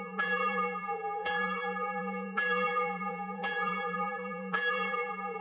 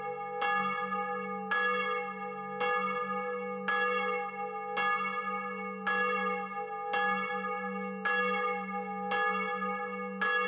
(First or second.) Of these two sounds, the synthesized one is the first